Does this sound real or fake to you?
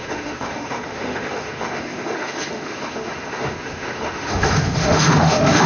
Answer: fake